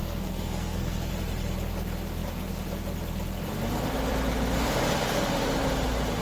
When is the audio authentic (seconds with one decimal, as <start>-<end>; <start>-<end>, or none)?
1.1-6.2

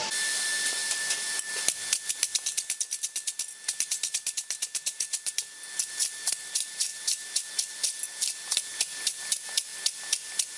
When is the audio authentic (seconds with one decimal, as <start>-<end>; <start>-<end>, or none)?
0.0-10.6

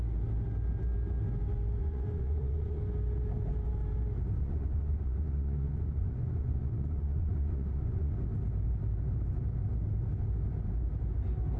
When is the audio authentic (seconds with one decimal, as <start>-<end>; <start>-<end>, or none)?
0.0-1.8; 2.8-4.4; 8.1-11.6

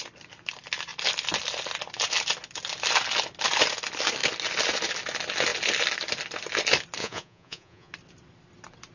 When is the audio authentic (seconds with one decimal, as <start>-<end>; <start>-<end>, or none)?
0.0-7.0; 7.9-8.9

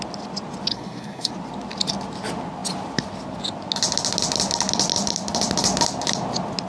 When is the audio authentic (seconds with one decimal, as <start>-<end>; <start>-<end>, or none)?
0.0-0.7; 1.3-6.7